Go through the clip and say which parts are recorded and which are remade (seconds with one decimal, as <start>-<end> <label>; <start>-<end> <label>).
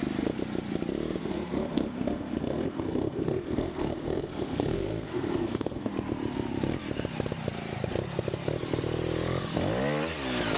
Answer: 0.0-1.2 recorded; 1.2-5.9 remade; 5.9-10.6 recorded